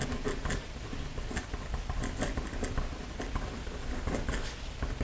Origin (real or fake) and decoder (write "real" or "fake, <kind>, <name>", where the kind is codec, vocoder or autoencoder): real